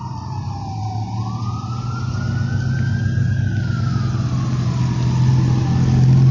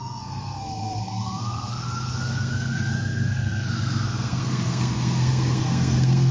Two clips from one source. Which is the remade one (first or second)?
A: second